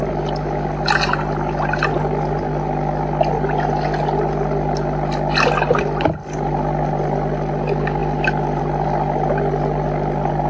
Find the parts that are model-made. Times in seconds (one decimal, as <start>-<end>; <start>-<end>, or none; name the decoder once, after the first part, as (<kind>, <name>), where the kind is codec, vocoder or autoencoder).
none